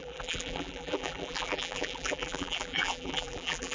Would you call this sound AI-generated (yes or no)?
yes